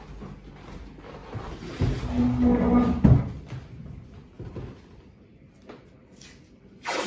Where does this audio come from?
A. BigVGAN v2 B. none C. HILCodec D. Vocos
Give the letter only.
B